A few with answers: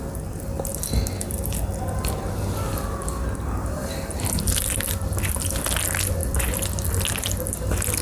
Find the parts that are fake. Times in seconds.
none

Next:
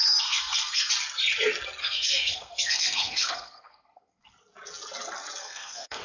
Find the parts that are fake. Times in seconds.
0.0-0.9 (codec, SNAC); 1.8-4.3; 5.4-6.0

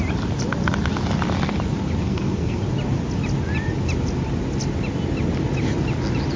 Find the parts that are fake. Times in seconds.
2.0-2.6 (codec, SNAC)

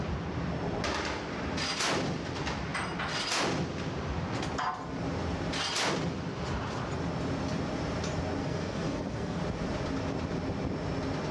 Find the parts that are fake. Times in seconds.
8.4-9.4 (codec, SNAC)

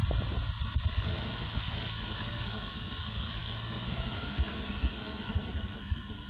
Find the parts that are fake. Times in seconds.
0.9-6.3 (codec, SNAC)

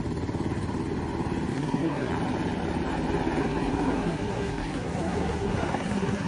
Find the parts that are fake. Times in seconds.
1.5-2.1 (codec, SNAC); 3.4-6.3

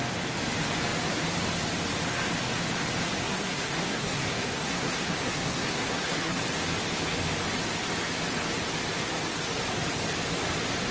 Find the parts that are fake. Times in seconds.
3.2-6.4 (codec, SNAC)

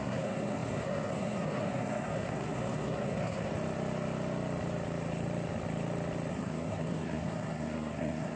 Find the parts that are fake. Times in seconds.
0.0-3.5 (codec, SNAC); 6.3-8.4